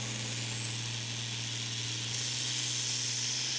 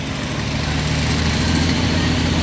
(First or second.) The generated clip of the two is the second